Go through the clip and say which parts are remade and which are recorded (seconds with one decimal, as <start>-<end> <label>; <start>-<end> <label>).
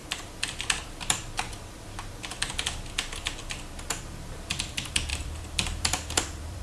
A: 0.0-5.1 recorded; 5.1-6.6 remade